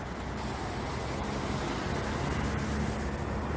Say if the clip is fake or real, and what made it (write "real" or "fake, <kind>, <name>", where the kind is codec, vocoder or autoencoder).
real